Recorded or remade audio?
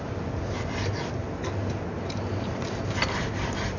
recorded